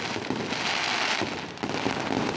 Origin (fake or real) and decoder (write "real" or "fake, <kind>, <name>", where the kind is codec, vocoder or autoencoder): real